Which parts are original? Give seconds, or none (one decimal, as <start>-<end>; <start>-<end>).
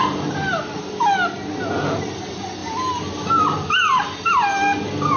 0.0-5.2